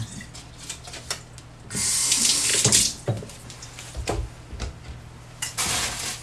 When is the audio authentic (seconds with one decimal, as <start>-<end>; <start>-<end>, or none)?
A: 0.0-6.2

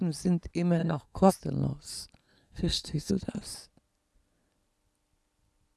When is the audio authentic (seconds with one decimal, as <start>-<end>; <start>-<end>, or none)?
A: 0.0-0.8; 1.3-2.2; 3.1-5.8

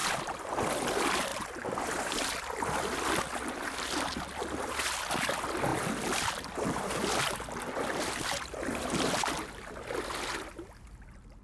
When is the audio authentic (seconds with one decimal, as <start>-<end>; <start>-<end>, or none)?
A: 0.7-5.7; 8.8-11.4

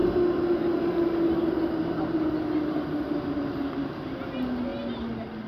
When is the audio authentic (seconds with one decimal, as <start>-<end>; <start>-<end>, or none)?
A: 0.0-5.5

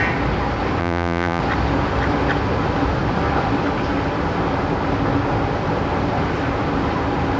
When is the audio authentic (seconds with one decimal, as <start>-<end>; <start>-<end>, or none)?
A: 0.0-0.8; 1.4-7.4

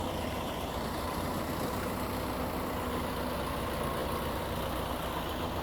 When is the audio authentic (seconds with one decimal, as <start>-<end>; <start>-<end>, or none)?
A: 1.5-5.6

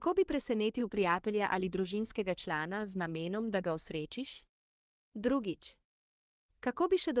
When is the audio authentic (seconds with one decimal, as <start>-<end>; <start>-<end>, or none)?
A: 0.0-0.8; 4.6-7.2